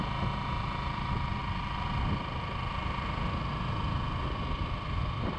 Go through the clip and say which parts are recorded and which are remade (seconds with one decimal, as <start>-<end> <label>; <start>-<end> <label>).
0.0-5.4 recorded